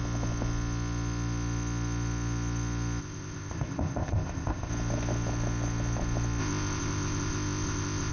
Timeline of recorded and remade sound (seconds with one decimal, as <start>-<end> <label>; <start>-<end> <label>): 0.0-3.0 recorded; 3.0-4.7 remade; 4.7-6.4 recorded; 6.4-8.1 remade